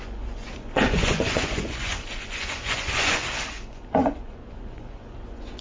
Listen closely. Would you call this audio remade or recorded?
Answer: remade